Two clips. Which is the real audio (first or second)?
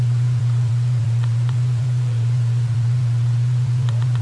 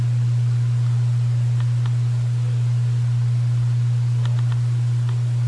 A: second